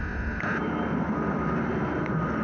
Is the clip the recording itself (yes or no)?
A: yes